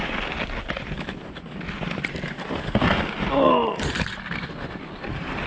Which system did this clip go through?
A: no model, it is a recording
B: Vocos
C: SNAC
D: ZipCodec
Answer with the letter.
A